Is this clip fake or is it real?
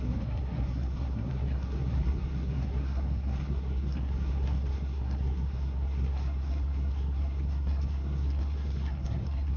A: fake